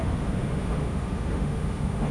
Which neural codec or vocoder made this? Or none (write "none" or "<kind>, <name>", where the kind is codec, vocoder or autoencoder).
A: autoencoder, DAC-VAE